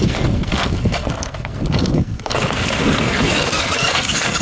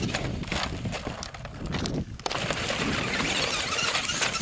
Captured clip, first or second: second